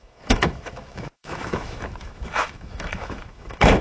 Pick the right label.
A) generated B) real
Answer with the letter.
A